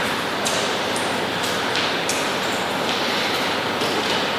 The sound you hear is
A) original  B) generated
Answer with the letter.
A